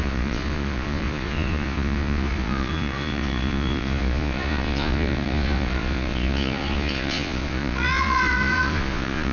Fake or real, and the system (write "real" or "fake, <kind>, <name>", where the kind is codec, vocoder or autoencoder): fake, vocoder, Vocos